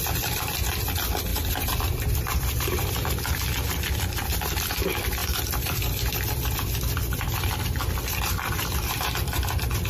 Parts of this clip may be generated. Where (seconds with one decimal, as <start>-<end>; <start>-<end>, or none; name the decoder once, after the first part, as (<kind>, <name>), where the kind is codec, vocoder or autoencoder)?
0.0-9.9 (vocoder, BigVGAN v2)